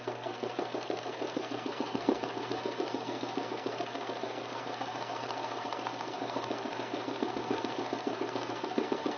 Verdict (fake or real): fake